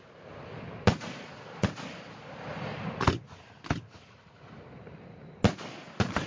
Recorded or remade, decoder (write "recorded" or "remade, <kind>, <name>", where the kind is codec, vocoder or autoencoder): recorded